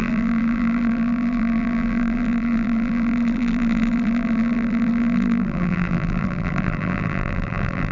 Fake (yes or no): yes